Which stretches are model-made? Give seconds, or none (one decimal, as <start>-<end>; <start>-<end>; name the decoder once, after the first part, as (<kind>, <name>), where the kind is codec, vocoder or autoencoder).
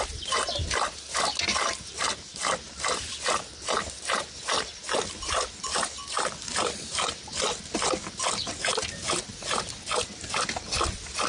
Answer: none